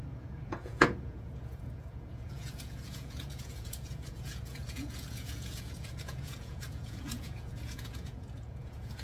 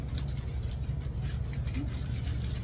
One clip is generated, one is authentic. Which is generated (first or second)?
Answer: first